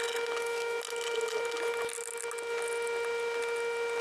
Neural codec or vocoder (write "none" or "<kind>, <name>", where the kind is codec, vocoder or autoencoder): none